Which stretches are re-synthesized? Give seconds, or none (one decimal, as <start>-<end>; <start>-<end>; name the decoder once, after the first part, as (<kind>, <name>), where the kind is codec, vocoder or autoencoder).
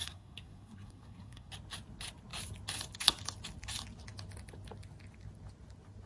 0.0-1.5 (codec, SNAC)